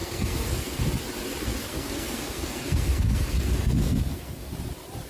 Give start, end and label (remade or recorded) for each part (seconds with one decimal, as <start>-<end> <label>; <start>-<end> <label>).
0.0-0.8 remade; 0.8-1.4 recorded; 1.4-4.5 remade; 4.5-5.1 recorded